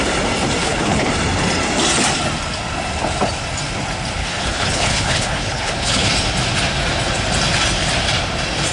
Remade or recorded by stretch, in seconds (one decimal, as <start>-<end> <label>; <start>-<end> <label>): 0.0-0.6 recorded; 0.6-1.1 remade; 1.1-4.2 recorded; 4.2-6.1 remade; 6.1-8.7 recorded